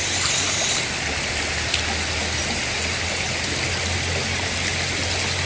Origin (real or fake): real